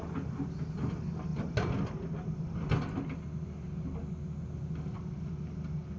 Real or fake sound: real